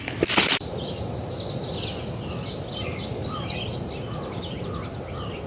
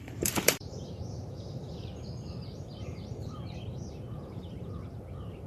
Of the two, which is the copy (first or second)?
second